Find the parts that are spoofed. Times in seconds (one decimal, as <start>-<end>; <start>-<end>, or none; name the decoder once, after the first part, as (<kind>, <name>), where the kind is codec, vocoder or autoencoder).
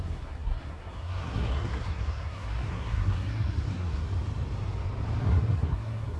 0.0-4.0 (codec, SNAC); 5.2-6.2